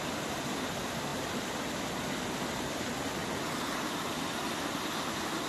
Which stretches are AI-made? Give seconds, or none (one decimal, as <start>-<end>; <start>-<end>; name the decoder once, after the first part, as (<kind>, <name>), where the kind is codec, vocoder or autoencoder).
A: none